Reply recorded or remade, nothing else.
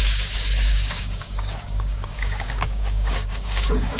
remade